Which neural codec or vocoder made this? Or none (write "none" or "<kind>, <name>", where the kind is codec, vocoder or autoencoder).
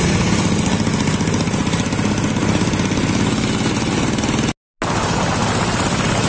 none